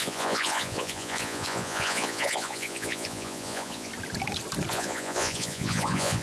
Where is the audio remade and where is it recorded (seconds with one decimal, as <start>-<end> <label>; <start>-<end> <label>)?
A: 0.0-3.9 remade; 3.9-4.7 recorded; 4.7-6.2 remade